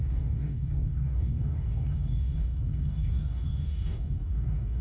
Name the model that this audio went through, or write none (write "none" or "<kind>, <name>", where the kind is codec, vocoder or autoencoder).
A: codec, DAC